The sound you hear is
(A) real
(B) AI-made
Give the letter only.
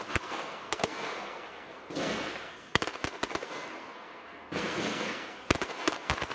B